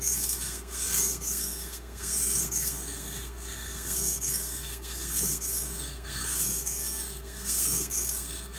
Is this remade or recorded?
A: remade